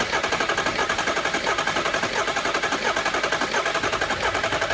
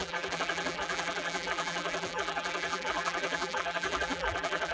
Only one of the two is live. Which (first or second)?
first